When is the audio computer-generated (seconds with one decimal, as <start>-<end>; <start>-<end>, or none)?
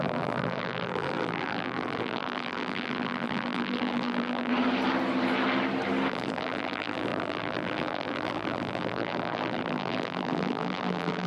0.0-4.5; 6.1-11.3